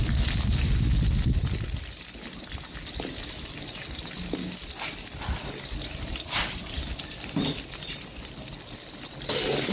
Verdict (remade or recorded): recorded